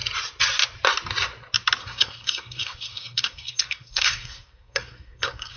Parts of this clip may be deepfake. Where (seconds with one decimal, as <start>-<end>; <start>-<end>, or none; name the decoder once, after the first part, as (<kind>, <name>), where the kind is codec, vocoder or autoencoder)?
1.8-5.6 (codec, SNAC)